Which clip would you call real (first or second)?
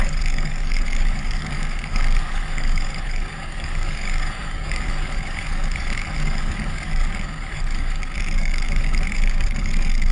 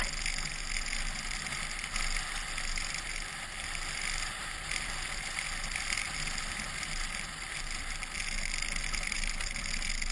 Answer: second